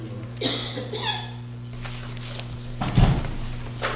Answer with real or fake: real